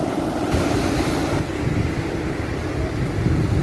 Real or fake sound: real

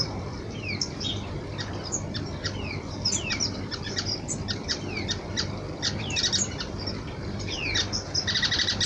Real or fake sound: fake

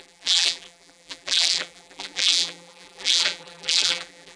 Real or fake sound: fake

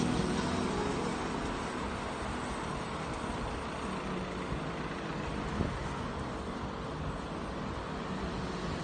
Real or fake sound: real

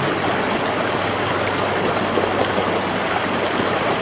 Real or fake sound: real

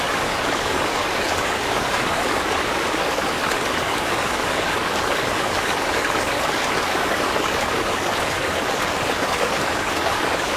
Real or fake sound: fake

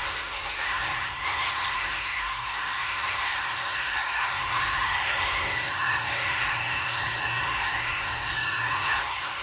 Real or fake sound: fake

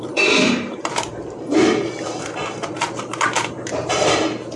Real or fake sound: fake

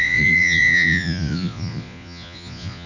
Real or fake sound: fake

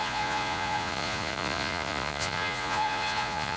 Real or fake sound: fake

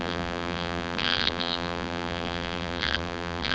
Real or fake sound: fake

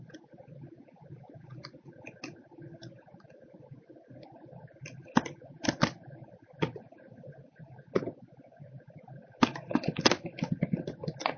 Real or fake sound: real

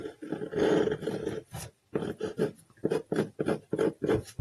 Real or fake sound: fake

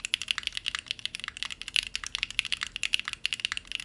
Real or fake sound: real